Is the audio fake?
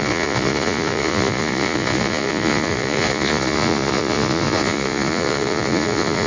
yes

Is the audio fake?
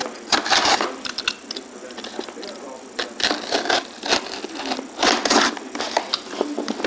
no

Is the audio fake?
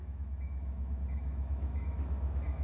yes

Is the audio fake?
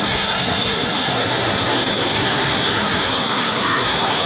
yes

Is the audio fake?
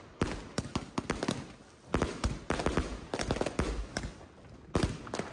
no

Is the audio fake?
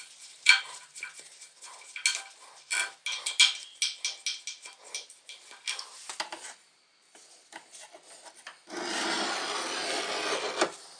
no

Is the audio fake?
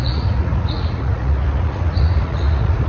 yes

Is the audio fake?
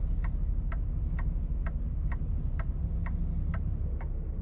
no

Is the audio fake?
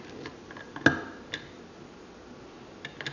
no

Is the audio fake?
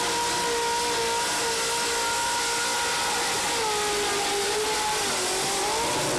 no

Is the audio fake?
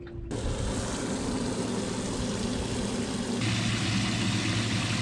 no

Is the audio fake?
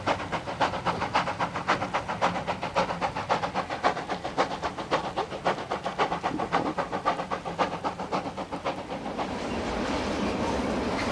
no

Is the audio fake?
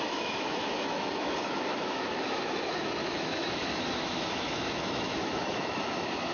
yes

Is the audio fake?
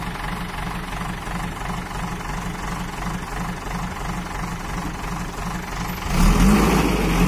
no